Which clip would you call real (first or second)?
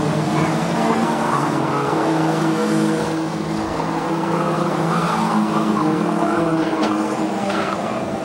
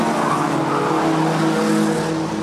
second